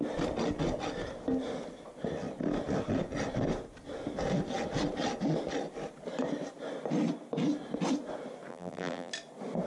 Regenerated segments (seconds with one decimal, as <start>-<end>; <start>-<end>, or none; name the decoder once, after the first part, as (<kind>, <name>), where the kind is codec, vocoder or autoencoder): 8.5-9.1 (vocoder, BigVGAN v2)